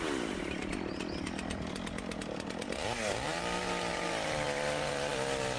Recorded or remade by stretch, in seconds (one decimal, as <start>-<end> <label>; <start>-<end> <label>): 0.0-5.6 recorded